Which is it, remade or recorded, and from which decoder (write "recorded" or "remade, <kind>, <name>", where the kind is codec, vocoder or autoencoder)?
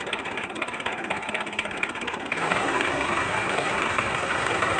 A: remade, codec, SNAC